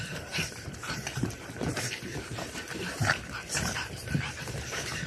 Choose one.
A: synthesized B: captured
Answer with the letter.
A